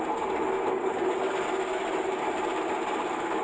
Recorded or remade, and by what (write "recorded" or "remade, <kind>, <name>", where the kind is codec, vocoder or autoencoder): recorded